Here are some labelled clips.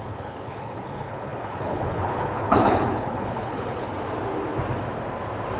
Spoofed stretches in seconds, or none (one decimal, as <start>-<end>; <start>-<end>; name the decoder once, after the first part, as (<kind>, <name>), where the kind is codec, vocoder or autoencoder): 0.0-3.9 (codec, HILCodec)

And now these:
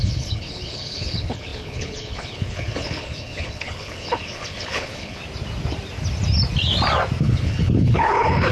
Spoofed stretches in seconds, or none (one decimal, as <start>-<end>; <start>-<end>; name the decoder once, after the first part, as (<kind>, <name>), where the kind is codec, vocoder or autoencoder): 0.0-5.2 (codec, HILCodec); 7.2-8.5

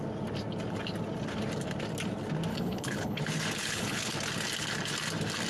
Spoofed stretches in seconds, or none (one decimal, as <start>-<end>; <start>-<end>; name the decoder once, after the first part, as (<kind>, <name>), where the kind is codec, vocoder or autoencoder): 2.5-3.2 (codec, HILCodec); 3.6-4.1

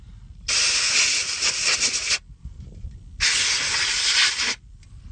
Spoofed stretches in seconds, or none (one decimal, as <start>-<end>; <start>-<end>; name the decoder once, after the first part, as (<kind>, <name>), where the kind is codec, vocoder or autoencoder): none

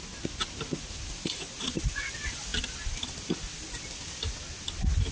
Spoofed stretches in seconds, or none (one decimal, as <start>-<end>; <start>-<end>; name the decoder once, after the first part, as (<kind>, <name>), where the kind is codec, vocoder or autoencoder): none